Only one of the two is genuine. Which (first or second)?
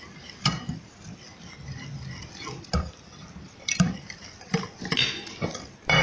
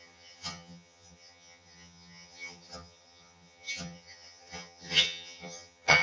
first